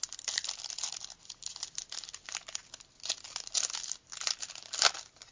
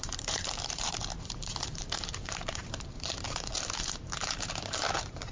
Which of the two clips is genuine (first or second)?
first